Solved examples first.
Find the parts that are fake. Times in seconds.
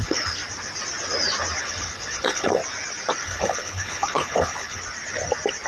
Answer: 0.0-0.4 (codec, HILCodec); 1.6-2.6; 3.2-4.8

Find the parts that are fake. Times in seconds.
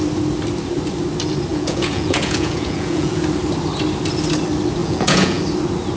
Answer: 1.5-3.2 (vocoder, Vocos); 4.8-5.4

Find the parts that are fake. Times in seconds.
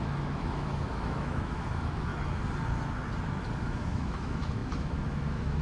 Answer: 0.0-2.1 (autoencoder, DAC-VAE); 3.6-5.6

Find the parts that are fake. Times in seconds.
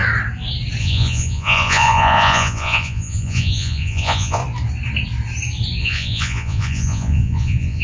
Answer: 0.8-4.4 (vocoder, Vocos); 5.8-7.8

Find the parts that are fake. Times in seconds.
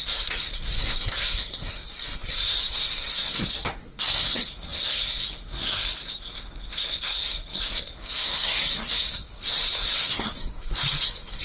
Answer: 0.0-11.4 (codec, SNAC)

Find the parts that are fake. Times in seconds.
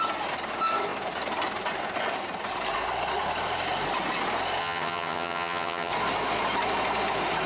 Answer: 4.6-5.9 (vocoder, HiFi-GAN)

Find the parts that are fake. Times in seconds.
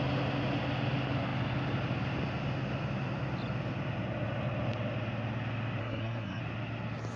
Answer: 5.8-6.4 (codec, SNAC)